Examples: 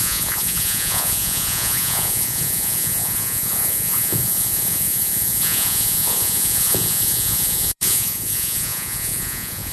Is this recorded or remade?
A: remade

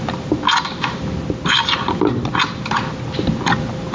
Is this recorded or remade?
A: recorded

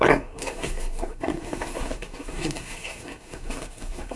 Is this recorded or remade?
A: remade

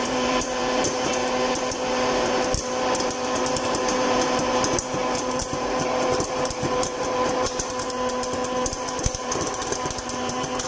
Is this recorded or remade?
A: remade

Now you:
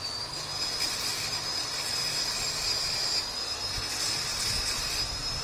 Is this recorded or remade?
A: recorded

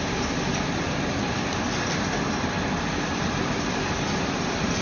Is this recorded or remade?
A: recorded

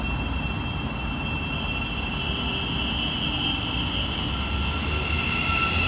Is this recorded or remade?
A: recorded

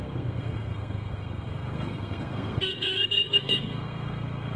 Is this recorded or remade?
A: remade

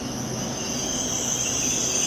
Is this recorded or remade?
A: recorded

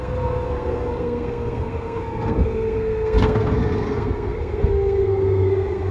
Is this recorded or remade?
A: remade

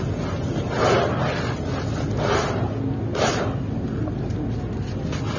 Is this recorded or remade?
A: recorded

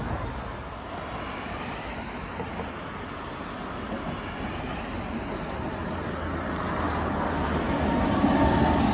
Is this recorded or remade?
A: recorded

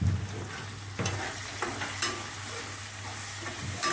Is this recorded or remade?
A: recorded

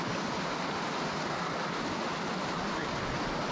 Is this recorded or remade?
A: recorded